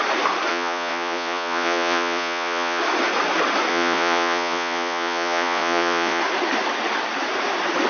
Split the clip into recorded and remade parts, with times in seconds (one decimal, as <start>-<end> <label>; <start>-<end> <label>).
0.0-0.5 recorded; 0.5-2.8 remade; 2.8-3.7 recorded; 3.7-6.2 remade; 6.2-7.9 recorded